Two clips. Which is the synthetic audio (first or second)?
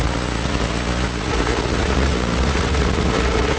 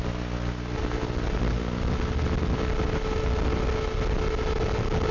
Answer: first